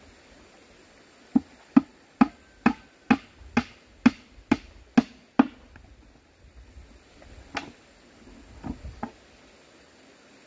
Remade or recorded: recorded